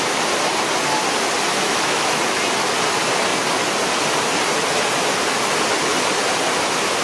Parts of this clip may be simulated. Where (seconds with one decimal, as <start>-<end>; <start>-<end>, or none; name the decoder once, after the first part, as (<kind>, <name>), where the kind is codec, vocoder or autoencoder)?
1.5-2.2 (autoencoder, DAC-VAE)